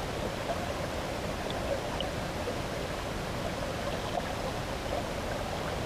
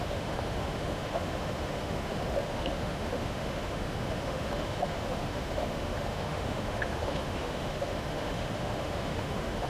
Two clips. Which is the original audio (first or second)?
first